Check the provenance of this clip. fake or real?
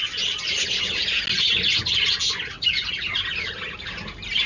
real